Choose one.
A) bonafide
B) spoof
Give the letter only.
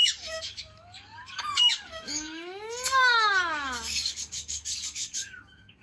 B